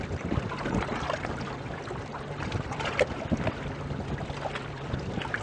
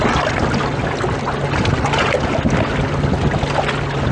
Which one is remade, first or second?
first